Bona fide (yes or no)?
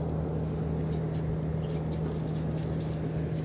yes